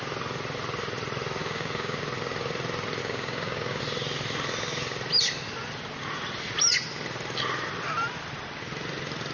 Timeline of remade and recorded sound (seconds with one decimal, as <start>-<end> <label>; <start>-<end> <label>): 0.0-1.4 recorded; 1.4-2.0 remade; 2.0-3.0 recorded; 3.0-3.8 remade; 3.8-9.3 recorded